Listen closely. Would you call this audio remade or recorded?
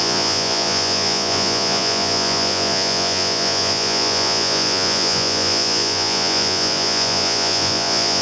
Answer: remade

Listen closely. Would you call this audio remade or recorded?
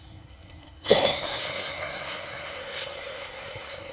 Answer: remade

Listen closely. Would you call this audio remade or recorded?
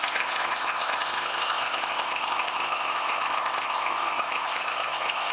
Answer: remade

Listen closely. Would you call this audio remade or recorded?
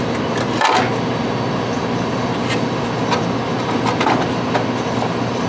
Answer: recorded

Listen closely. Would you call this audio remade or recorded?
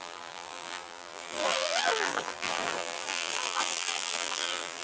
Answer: remade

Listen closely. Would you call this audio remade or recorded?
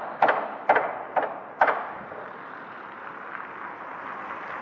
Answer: recorded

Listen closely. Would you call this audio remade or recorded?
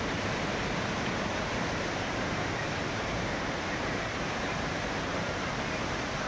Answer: remade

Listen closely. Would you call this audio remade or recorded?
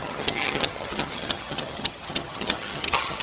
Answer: remade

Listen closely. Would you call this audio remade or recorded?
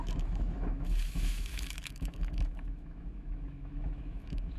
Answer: remade